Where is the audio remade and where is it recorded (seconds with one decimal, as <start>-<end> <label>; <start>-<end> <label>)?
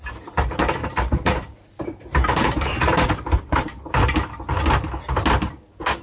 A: 0.0-0.8 recorded; 0.8-4.4 remade; 4.4-6.0 recorded